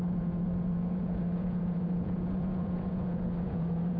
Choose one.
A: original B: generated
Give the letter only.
B